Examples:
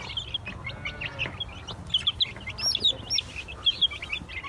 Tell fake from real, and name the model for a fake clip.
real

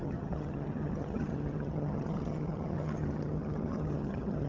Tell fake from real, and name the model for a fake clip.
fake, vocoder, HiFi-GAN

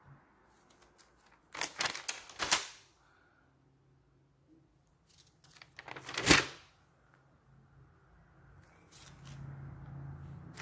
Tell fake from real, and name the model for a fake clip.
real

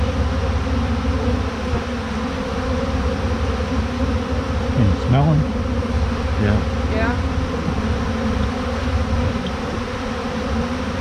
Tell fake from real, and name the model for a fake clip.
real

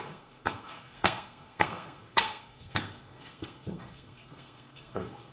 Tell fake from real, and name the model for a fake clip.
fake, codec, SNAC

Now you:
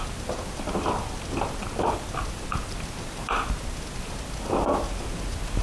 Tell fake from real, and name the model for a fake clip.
real